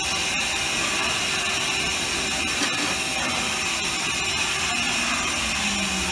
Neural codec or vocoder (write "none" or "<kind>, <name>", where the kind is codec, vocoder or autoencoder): none